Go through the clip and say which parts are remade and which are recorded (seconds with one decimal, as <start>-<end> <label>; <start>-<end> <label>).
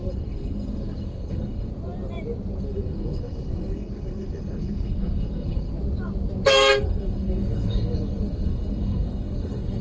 0.0-1.7 remade; 1.7-2.6 recorded; 2.6-5.7 remade; 5.7-6.5 recorded; 6.5-9.8 remade